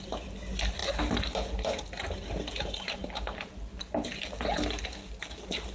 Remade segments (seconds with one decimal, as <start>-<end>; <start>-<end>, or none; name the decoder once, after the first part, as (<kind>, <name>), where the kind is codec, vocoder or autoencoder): none